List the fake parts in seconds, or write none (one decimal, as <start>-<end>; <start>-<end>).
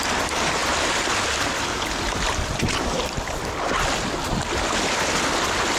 none